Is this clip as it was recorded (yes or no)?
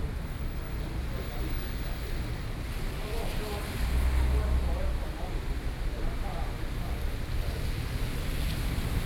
yes